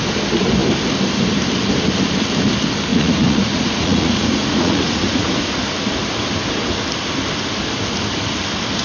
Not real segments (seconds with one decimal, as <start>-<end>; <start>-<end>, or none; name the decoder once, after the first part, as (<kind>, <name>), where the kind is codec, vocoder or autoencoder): 2.9-5.5 (vocoder, Vocos)